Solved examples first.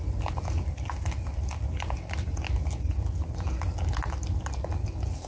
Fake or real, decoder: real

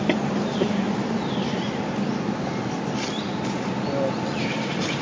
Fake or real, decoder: real